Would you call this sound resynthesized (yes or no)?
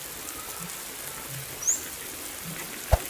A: no